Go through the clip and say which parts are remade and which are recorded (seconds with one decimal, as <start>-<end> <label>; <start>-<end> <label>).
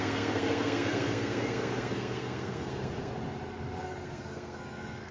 0.0-3.1 remade; 3.1-3.8 recorded; 3.8-5.1 remade